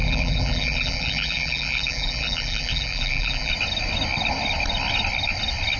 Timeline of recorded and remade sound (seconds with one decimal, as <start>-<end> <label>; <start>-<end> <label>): 0.0-3.5 remade; 3.5-5.8 recorded